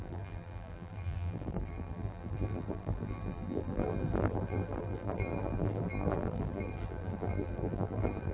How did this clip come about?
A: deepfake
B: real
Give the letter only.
A